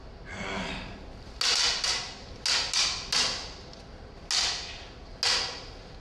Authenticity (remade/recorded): recorded